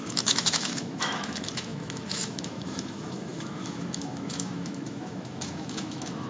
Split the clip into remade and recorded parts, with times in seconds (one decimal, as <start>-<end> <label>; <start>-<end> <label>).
0.0-6.3 remade